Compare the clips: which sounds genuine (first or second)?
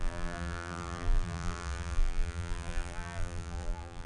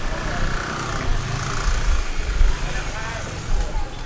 second